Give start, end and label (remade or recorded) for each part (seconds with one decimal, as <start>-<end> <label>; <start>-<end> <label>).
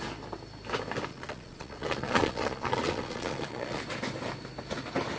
0.0-1.1 recorded; 1.1-3.8 remade; 3.8-5.2 recorded